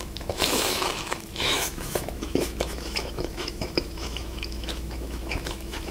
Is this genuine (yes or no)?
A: no